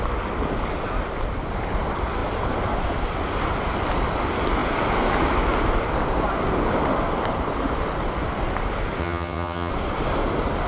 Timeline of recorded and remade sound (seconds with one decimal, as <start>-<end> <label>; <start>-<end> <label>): 0.0-9.0 recorded; 9.0-9.7 remade; 9.7-10.7 recorded